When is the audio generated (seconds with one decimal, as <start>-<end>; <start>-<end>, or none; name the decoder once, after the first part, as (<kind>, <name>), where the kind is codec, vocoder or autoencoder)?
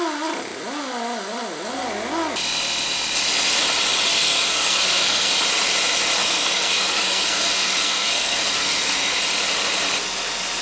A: 4.1-5.3 (codec, SNAC); 6.2-9.2